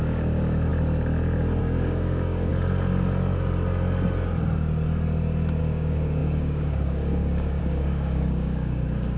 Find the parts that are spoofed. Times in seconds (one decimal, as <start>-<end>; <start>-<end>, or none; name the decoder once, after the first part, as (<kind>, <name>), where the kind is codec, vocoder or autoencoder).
0.0-0.7 (codec, DAC); 1.6-2.5; 5.6-9.2